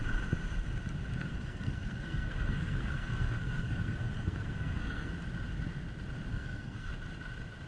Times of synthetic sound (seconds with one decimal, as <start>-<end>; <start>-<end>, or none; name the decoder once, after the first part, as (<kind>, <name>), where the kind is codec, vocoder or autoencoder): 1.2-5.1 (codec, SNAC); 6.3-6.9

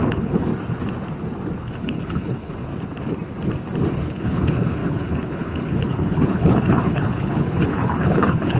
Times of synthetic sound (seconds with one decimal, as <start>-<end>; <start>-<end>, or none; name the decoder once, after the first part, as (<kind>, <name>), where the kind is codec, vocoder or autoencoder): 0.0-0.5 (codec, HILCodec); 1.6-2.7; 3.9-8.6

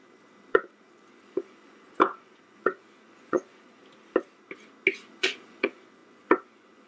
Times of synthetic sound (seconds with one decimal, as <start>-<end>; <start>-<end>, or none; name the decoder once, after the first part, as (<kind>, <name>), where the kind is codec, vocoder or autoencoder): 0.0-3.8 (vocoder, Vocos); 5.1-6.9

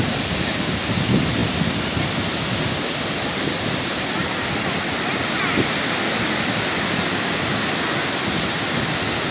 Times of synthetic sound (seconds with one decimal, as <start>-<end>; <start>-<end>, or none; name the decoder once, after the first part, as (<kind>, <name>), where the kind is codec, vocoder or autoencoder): none

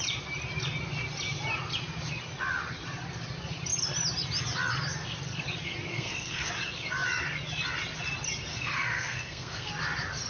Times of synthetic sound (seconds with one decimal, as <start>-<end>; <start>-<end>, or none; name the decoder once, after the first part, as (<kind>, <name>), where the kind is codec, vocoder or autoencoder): 5.9-6.5 (codec, SNAC); 8.5-9.7

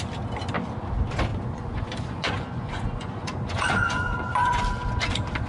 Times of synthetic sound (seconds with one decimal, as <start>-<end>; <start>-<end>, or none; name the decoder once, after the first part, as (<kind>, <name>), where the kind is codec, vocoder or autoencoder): 1.3-4.6 (vocoder, Vocos)

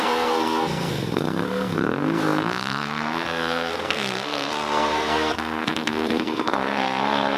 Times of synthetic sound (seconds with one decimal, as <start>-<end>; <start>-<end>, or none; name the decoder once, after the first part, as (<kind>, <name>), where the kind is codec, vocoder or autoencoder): 0.0-7.4 (codec, SNAC)